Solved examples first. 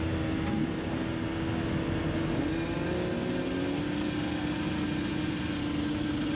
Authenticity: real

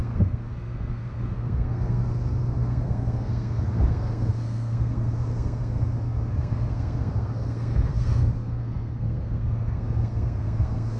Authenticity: fake